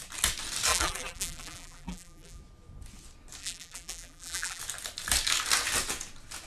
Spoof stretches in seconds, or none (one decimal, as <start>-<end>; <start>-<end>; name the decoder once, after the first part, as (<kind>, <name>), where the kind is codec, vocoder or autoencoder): 0.7-2.4 (vocoder, BigVGAN v2); 3.4-4.6